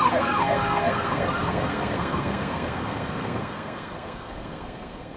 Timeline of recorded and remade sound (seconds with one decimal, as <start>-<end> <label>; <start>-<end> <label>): 0.0-5.2 remade